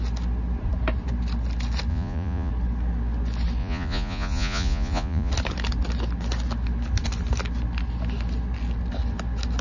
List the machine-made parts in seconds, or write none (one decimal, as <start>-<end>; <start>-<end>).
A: 1.9-2.5; 3.6-5.3